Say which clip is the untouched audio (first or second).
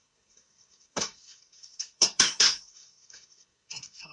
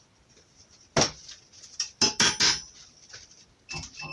second